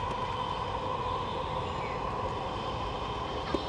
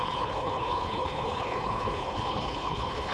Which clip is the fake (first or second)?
second